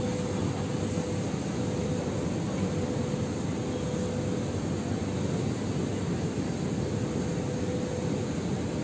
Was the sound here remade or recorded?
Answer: recorded